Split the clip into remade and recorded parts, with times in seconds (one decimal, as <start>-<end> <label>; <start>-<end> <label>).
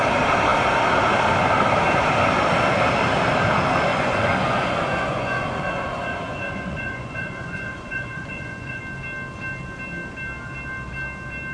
0.0-3.9 recorded; 3.9-8.8 remade; 8.8-11.5 recorded